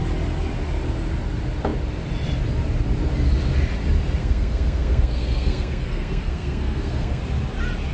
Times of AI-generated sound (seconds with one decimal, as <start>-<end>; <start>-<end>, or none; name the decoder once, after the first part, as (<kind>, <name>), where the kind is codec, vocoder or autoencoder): 4.2-7.2 (codec, SNAC)